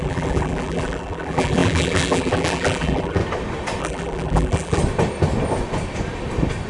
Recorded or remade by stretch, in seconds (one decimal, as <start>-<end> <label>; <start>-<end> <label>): 0.0-3.2 remade; 3.2-3.8 recorded; 3.8-4.8 remade; 4.8-6.7 recorded